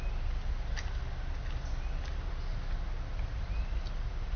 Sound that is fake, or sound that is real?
real